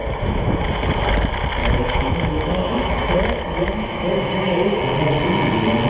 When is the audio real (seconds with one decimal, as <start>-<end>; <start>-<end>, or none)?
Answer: 0.6-1.6; 4.8-5.9